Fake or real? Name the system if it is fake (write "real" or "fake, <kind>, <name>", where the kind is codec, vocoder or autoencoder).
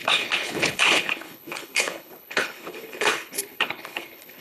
fake, codec, HILCodec